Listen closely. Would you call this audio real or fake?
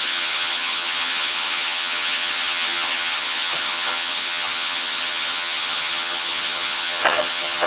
fake